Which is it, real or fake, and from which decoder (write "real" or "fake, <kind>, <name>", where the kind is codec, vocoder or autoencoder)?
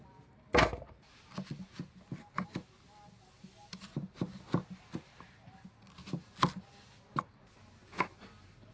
real